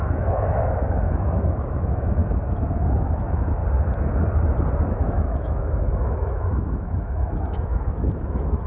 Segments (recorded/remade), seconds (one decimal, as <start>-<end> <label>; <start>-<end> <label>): 0.0-2.2 remade; 2.2-3.0 recorded; 3.0-3.6 remade; 3.6-4.9 recorded; 4.9-8.7 remade